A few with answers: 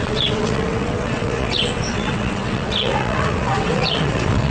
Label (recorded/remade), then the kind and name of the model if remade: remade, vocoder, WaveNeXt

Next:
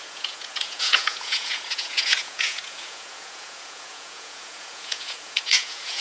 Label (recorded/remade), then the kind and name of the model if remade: remade, vocoder, Vocos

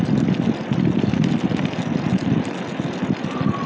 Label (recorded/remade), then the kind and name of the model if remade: recorded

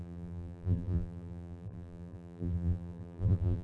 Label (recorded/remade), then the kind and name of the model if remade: remade, vocoder, BigVGAN v2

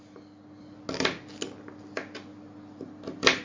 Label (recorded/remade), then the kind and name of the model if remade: recorded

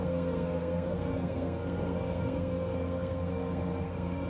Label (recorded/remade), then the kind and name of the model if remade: remade, codec, SNAC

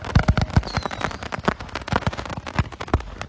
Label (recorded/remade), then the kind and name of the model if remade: recorded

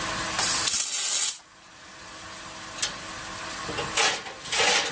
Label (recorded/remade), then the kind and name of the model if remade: recorded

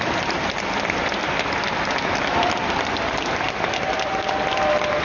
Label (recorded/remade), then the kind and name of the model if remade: recorded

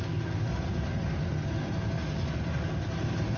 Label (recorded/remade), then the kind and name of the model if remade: recorded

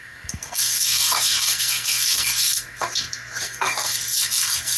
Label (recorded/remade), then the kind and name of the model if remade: remade, codec, SNAC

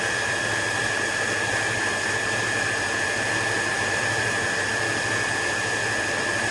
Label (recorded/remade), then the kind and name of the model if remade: recorded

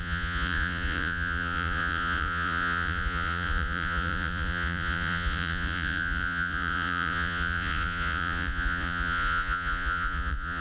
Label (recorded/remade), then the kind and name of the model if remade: remade, vocoder, Vocos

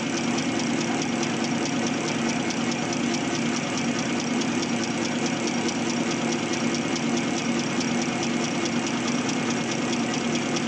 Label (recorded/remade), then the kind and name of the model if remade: recorded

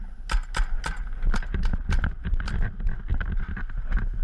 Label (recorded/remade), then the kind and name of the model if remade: recorded